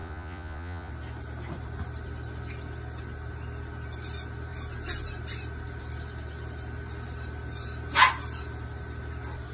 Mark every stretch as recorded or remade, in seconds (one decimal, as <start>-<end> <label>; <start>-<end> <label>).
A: 0.0-0.9 remade; 0.9-9.5 recorded